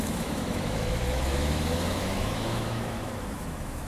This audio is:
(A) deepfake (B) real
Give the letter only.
A